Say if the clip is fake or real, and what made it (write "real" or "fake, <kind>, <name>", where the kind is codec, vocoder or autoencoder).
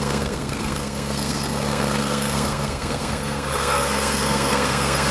fake, codec, SNAC